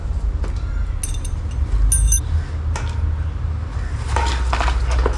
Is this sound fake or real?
real